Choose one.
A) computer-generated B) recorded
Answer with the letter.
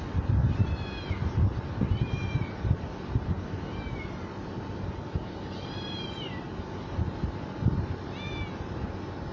B